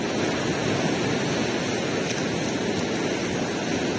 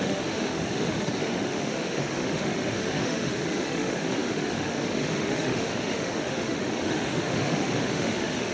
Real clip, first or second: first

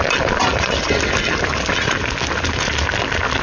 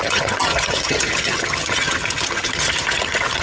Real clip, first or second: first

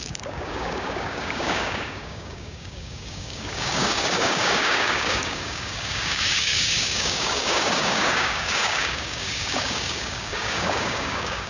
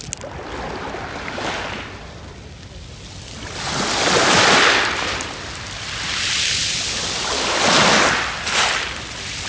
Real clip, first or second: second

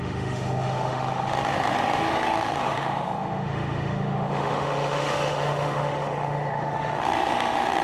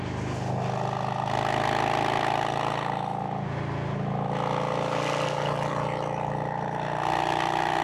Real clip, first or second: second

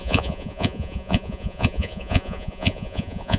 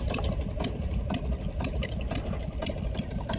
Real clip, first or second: second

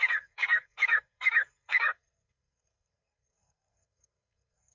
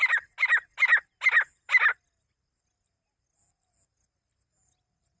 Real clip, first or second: second